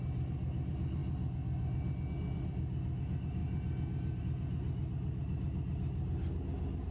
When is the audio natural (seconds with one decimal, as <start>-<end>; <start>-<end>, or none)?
0.0-6.9